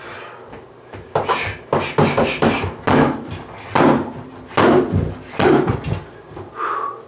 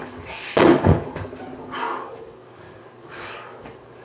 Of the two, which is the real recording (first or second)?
first